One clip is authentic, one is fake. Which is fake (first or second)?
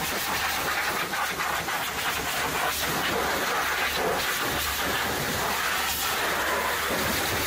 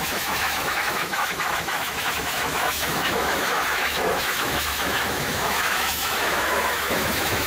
second